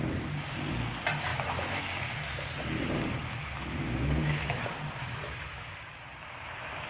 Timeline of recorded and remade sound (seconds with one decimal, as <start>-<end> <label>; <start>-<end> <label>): 0.0-1.3 recorded; 1.3-1.8 remade; 1.8-3.2 recorded; 3.2-4.6 remade; 4.6-5.0 recorded; 5.0-5.9 remade; 5.9-6.9 recorded